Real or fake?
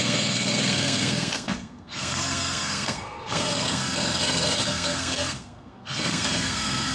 fake